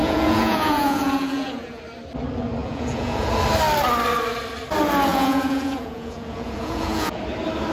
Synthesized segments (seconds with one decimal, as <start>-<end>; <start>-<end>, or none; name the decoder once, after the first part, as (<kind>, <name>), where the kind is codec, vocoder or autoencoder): 0.0-1.8 (vocoder, Vocos); 2.6-3.3; 5.1-7.2